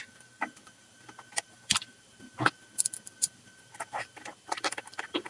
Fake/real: fake